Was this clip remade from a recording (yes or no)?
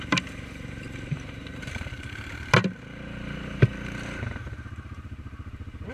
yes